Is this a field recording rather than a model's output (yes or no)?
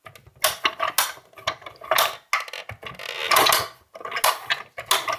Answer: yes